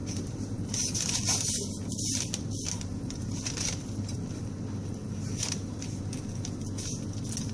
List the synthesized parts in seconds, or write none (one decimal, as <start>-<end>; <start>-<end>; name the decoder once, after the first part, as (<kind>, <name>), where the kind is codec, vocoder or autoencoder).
0.0-4.5 (vocoder, BigVGAN v2); 5.0-6.0